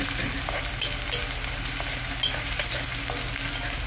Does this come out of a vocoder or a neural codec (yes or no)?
no